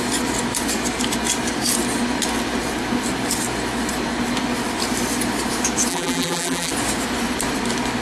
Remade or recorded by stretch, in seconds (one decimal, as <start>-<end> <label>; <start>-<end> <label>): 0.0-5.9 recorded; 5.9-6.7 remade; 6.7-8.0 recorded